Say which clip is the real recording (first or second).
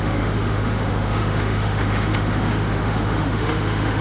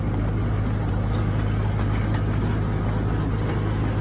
second